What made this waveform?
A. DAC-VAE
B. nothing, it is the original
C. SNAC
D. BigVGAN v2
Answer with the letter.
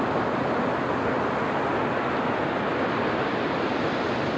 B